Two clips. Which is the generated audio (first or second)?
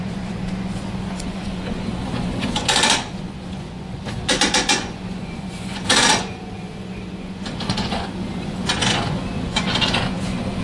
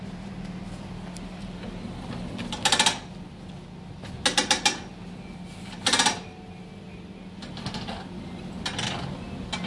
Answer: first